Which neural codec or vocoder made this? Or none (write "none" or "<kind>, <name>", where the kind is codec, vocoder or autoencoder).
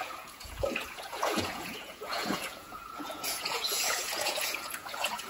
vocoder, Vocos